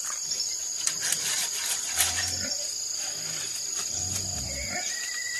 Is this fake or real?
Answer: real